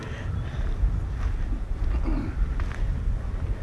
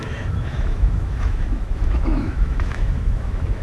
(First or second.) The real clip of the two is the first